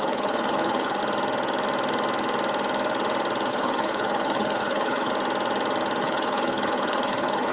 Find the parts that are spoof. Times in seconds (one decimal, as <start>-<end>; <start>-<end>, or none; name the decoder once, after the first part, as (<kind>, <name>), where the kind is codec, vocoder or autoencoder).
0.0-1.0 (codec, HILCodec); 3.5-5.1; 6.0-7.5